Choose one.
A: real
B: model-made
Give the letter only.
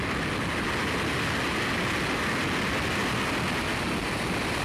A